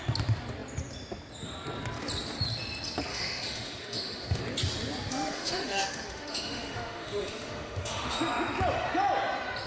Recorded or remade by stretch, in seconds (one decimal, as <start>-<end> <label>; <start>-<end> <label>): 0.0-3.1 recorded; 3.1-4.4 remade; 4.4-5.1 recorded; 5.1-8.2 remade; 8.2-9.7 recorded

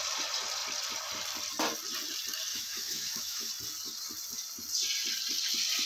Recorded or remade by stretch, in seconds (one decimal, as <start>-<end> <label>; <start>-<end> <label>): 0.0-2.5 recorded; 2.5-3.5 remade; 3.5-5.8 recorded

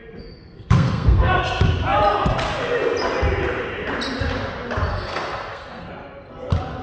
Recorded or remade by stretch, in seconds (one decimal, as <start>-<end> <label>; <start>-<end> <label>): 0.0-1.4 remade; 1.4-4.9 recorded; 4.9-5.9 remade; 5.9-6.8 recorded

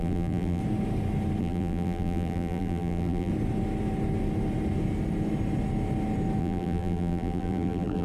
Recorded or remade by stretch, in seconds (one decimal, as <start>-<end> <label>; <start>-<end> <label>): 0.0-0.6 remade; 0.6-1.4 recorded; 1.4-3.3 remade; 3.3-6.4 recorded; 6.4-8.0 remade